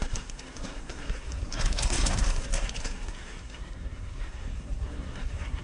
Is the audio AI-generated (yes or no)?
yes